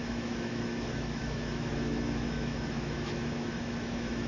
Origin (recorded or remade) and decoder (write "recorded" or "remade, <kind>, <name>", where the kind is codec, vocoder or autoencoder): remade, autoencoder, DAC-VAE